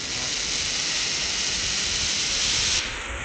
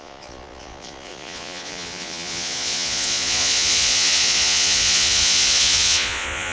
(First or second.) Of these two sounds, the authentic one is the first